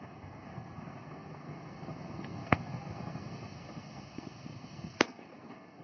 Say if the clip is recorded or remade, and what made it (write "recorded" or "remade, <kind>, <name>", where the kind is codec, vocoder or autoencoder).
remade, codec, SNAC